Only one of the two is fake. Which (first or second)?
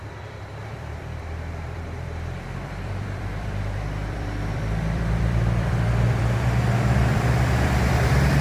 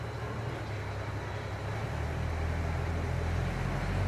first